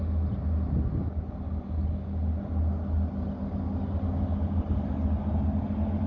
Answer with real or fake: real